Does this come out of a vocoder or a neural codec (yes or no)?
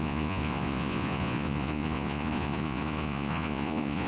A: yes